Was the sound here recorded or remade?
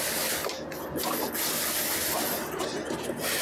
recorded